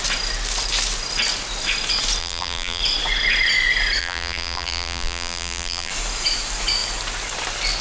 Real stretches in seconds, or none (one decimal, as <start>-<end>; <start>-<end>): 0.0-2.2; 2.8-4.0; 5.9-7.8